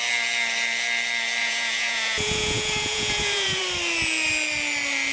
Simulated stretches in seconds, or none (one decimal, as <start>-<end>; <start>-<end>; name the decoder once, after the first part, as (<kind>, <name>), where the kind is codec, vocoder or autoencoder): 1.4-3.6 (vocoder, Vocos)